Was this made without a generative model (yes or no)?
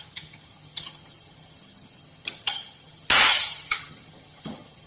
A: no